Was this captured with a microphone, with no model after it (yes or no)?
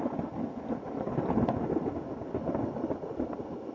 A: yes